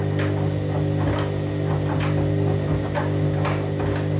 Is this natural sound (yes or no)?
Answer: yes